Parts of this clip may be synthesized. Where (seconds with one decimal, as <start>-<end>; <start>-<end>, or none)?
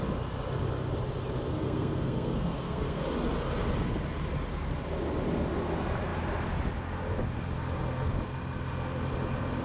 1.5-3.0